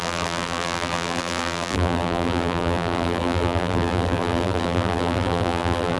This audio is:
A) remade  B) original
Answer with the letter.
A